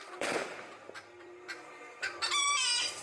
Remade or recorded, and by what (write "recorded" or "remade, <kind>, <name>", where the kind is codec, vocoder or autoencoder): remade, vocoder, BigVGAN v2